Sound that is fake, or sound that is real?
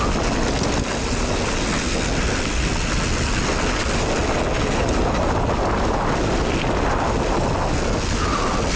real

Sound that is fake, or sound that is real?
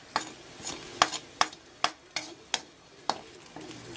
real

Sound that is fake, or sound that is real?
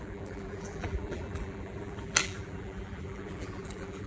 fake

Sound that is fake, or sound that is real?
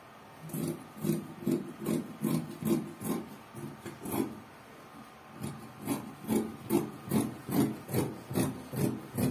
real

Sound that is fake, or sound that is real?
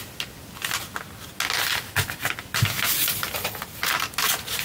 real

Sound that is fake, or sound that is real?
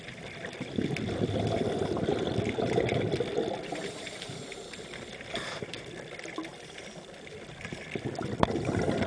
fake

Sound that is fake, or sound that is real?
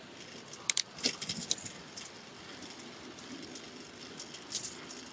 real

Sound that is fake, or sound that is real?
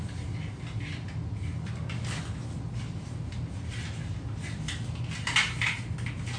real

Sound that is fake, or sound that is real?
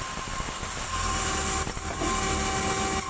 real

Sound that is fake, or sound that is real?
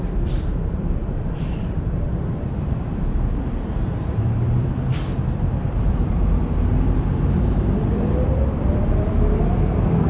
fake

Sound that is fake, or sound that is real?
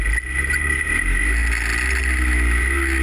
real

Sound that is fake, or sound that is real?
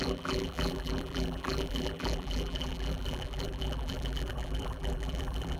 fake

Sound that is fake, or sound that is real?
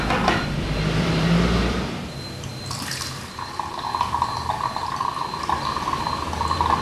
fake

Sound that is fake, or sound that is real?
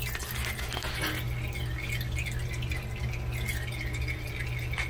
real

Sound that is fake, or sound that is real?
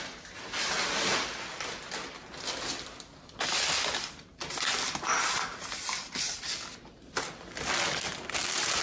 real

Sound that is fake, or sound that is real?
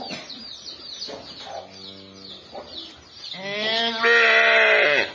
real